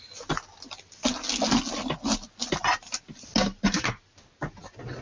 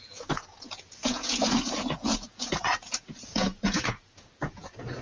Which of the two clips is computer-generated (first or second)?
second